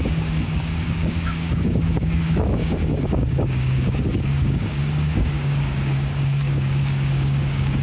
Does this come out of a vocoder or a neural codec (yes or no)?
yes